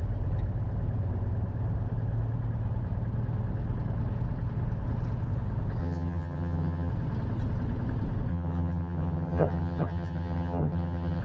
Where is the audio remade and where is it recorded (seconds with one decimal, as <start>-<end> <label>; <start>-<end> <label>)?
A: 0.0-5.8 recorded; 5.8-6.9 remade; 6.9-8.3 recorded; 8.3-11.2 remade